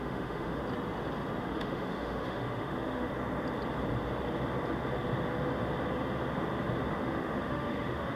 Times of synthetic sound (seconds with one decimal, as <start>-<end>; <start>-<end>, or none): 0.0-0.6; 1.4-3.1; 6.9-8.2